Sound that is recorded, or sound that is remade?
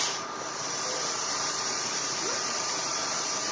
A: remade